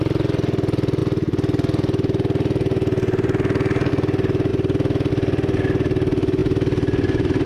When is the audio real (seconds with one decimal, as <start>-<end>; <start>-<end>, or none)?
0.0-7.5